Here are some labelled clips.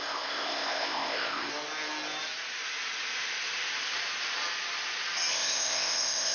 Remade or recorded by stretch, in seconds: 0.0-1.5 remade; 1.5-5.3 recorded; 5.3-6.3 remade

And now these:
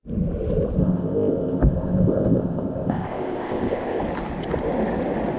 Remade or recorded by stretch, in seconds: 0.0-0.8 recorded; 0.8-4.0 remade; 4.0-5.4 recorded

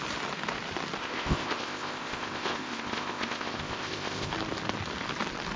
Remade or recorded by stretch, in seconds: 0.0-1.0 recorded; 1.0-4.3 remade; 4.3-5.6 recorded

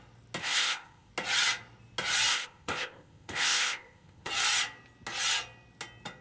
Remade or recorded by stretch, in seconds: 0.0-0.4 recorded; 0.4-1.1 remade; 1.1-2.3 recorded; 2.3-4.3 remade; 4.3-6.2 recorded

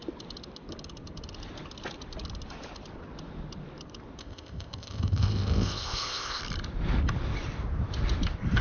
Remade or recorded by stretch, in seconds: 0.0-4.2 recorded; 4.2-6.4 remade; 6.4-8.6 recorded

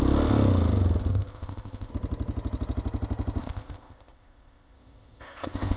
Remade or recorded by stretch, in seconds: 0.0-1.1 recorded; 1.1-1.9 remade; 1.9-3.4 recorded; 3.4-5.8 remade

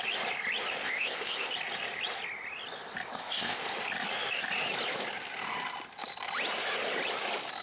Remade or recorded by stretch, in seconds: 0.0-0.8 recorded; 0.8-1.5 remade; 1.5-3.1 recorded; 3.1-3.6 remade; 3.6-7.6 recorded

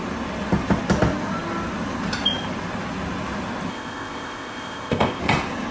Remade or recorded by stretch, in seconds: 0.0-3.7 recorded; 3.7-5.2 remade; 5.2-5.7 recorded